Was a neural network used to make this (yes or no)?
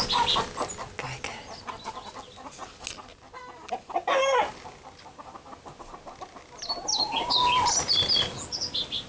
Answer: no